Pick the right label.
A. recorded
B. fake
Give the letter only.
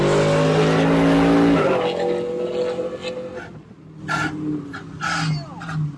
A